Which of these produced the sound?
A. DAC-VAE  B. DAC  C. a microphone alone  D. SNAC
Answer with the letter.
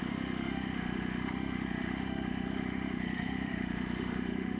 A